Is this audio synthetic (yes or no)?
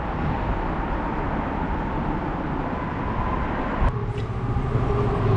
no